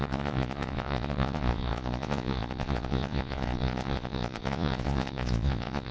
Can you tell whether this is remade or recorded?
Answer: remade